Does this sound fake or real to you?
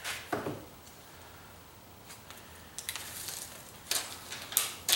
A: real